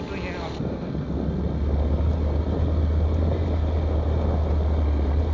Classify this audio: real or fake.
real